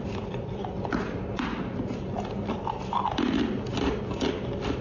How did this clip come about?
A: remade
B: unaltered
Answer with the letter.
B